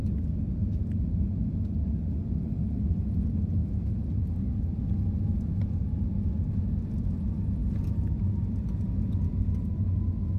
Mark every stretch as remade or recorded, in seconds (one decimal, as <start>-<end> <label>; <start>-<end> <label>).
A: 0.0-10.4 recorded

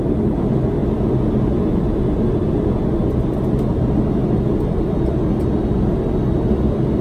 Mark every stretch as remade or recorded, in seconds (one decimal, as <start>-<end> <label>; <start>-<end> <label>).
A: 0.0-7.0 recorded